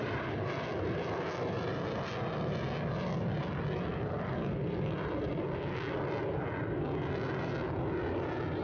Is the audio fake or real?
real